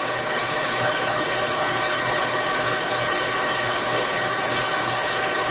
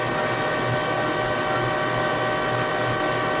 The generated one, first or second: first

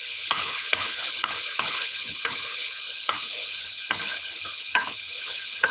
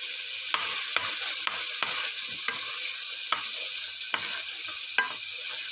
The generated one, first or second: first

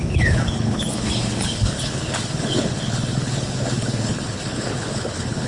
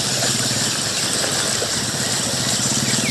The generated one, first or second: first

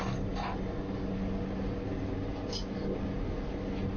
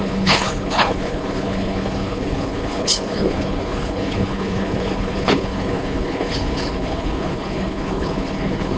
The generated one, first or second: second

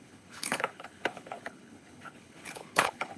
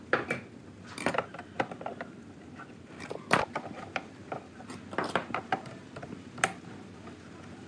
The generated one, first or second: first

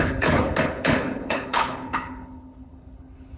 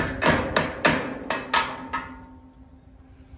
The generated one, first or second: first